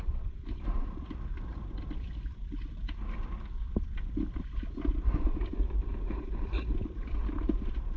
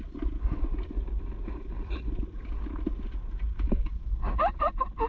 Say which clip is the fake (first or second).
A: first